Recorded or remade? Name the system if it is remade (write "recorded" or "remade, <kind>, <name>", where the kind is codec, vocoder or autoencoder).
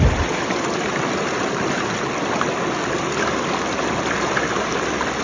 recorded